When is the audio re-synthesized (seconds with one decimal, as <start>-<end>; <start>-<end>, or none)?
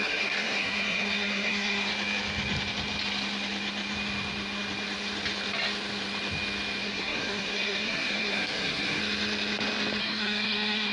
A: 0.0-1.9; 6.8-9.0; 10.0-10.9